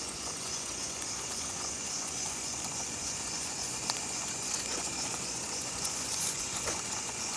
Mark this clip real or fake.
fake